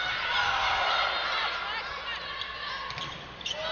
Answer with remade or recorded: recorded